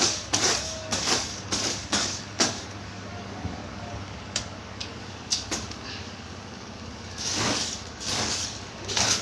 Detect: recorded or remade remade